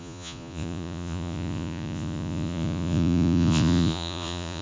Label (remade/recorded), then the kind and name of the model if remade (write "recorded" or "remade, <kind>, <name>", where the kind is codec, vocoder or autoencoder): remade, vocoder, Vocos